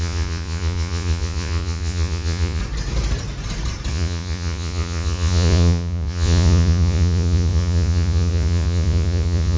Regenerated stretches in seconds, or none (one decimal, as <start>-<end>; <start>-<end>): 0.0-2.6; 3.9-9.6